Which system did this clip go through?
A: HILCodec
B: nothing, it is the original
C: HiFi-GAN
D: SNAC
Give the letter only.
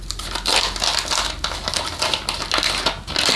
B